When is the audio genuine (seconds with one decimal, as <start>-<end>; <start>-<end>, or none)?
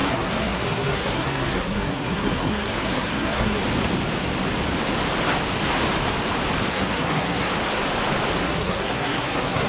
3.6-6.7; 7.5-8.4